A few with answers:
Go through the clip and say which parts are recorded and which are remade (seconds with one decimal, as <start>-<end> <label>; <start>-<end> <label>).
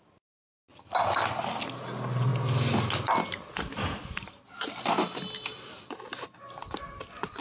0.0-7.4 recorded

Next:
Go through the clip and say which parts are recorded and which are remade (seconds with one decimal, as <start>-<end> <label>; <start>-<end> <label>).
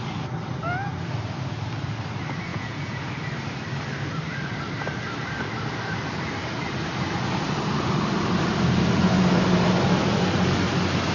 0.0-2.5 recorded; 2.5-3.1 remade; 3.1-11.1 recorded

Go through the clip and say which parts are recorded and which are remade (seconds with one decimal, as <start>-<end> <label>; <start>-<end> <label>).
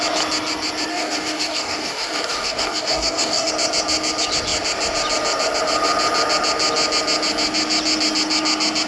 0.0-0.9 recorded; 0.9-3.5 remade; 3.5-8.9 recorded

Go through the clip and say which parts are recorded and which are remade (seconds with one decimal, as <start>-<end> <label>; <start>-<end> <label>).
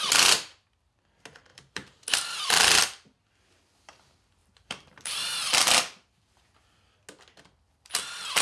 0.0-1.5 recorded; 1.5-2.5 remade; 2.5-4.4 recorded; 4.4-5.3 remade; 5.3-8.4 recorded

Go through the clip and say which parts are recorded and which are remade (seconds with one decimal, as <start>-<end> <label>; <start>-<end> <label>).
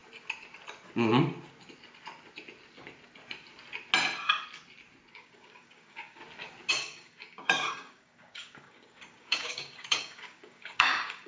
0.0-5.1 recorded; 5.1-6.2 remade; 6.2-6.7 recorded; 6.7-11.3 remade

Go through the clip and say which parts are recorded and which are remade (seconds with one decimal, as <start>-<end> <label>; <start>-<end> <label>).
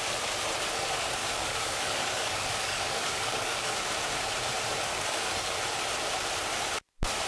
0.0-1.2 recorded; 1.2-3.9 remade; 3.9-4.9 recorded; 4.9-5.6 remade; 5.6-7.3 recorded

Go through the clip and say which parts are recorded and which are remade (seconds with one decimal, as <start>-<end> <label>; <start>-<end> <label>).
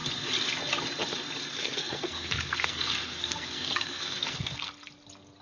0.0-1.5 recorded; 1.5-4.7 remade; 4.7-5.4 recorded